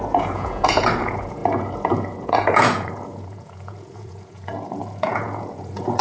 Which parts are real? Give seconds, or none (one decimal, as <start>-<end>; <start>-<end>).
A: none